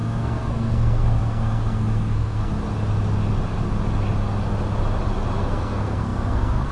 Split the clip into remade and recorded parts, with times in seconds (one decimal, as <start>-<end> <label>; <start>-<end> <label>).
0.0-2.5 remade; 2.5-5.4 recorded; 5.4-6.7 remade